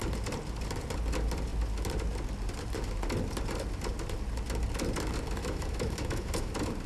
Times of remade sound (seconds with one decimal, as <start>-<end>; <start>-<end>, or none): 5.4-6.5